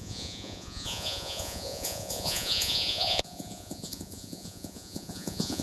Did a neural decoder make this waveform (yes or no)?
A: yes